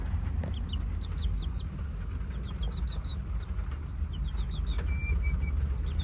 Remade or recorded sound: recorded